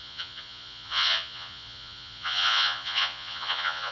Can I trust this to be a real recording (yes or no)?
no